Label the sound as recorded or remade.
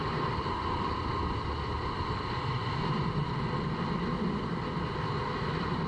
recorded